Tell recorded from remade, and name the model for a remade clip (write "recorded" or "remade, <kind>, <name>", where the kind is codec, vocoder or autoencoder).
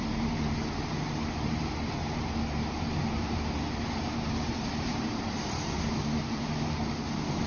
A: remade, vocoder, BigVGAN v2